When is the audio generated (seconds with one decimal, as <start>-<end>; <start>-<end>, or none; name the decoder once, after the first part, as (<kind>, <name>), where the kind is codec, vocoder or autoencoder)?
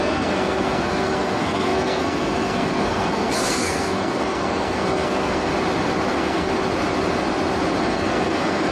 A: 0.0-5.5 (codec, SNAC); 6.1-6.5; 7.8-8.7